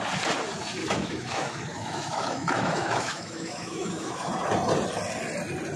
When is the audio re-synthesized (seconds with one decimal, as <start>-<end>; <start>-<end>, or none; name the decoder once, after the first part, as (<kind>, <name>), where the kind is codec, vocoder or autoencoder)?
0.8-4.3 (autoencoder, DAC-VAE)